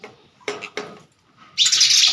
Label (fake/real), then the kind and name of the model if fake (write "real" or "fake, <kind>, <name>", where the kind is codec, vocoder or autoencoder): real